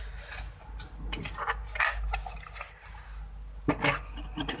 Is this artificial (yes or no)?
no